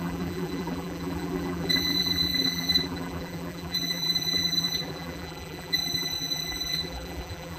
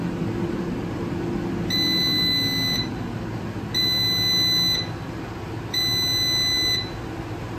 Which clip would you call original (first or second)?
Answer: second